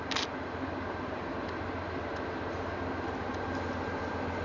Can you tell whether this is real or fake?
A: real